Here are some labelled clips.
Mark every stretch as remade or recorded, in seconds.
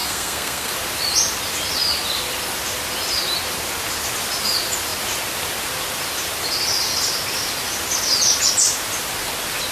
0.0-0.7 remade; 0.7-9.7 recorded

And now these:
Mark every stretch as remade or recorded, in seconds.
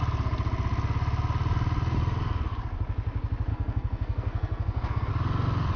0.0-3.5 recorded; 3.5-5.1 remade; 5.1-5.8 recorded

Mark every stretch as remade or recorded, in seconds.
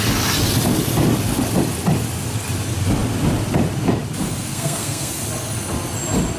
0.0-4.5 recorded; 4.5-5.1 remade; 5.1-6.4 recorded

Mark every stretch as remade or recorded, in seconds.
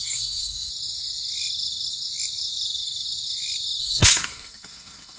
0.0-0.7 remade; 0.7-3.8 recorded; 3.8-5.2 remade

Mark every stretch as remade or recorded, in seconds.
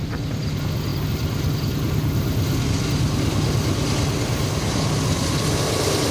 0.0-6.1 recorded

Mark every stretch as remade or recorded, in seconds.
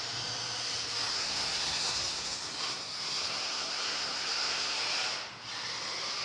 0.0-1.1 recorded; 1.1-4.8 remade; 4.8-6.2 recorded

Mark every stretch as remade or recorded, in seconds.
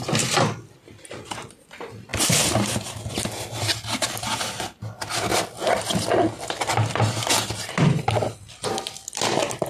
0.0-9.7 recorded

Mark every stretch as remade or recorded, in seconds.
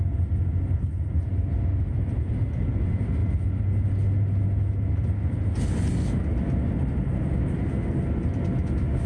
0.0-9.1 recorded